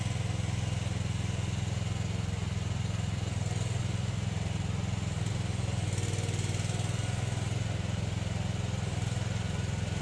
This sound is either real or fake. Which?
real